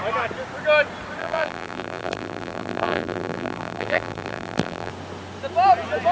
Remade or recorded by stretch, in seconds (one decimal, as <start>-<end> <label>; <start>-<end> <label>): 0.0-1.2 recorded; 1.2-4.9 remade; 4.9-6.1 recorded